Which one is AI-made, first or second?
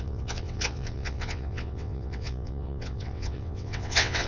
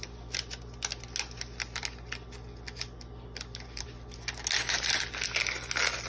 first